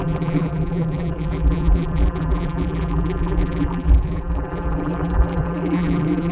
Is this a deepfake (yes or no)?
yes